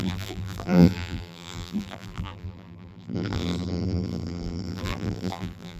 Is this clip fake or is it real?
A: fake